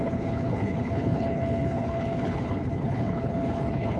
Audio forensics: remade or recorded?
remade